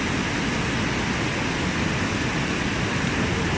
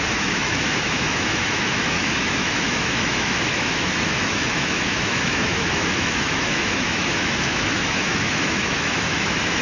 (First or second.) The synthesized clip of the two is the second